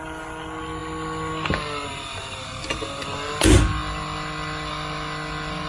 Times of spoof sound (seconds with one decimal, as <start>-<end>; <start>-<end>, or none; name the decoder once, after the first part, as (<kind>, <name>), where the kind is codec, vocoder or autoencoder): none